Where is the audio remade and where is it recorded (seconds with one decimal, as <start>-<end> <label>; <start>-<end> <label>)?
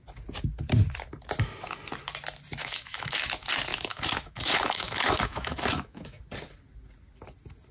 0.0-2.6 recorded; 2.6-3.3 remade; 3.3-3.7 recorded; 3.7-6.2 remade; 6.2-7.7 recorded